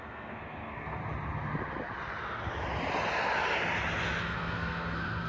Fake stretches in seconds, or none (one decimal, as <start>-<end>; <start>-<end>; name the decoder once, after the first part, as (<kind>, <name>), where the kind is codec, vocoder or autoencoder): 0.0-1.0 (codec, SNAC); 4.2-5.3